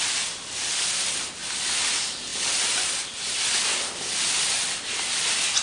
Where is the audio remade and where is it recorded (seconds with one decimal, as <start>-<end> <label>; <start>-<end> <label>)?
0.0-5.6 recorded